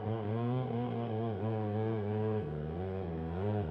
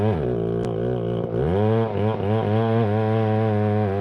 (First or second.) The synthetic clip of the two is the first